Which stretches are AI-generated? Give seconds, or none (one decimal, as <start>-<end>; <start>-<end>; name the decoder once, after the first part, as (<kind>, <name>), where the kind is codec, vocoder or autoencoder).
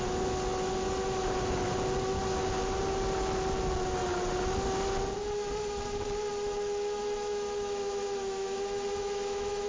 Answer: 7.0-9.7 (autoencoder, DAC-VAE)